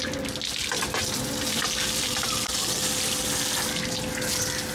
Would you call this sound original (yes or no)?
yes